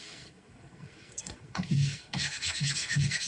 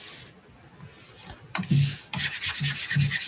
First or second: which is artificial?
first